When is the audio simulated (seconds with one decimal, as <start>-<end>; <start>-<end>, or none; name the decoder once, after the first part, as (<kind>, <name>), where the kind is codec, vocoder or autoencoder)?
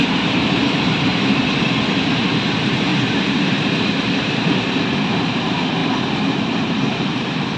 0.0-1.1 (vocoder, BigVGAN v2); 2.1-7.6